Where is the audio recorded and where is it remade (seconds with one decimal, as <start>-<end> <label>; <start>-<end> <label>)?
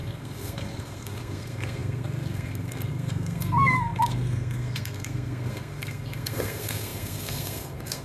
0.0-8.0 remade